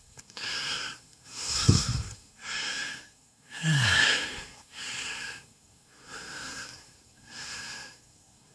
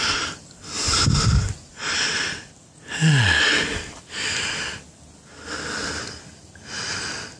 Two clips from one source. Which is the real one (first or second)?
second